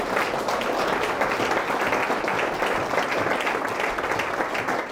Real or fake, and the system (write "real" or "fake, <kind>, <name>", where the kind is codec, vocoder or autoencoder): real